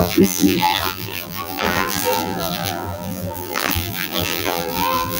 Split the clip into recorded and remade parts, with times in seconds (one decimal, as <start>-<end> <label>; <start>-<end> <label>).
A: 0.0-5.2 remade